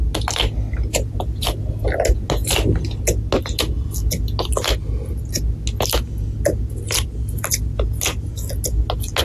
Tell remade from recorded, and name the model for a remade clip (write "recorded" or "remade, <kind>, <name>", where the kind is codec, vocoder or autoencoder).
recorded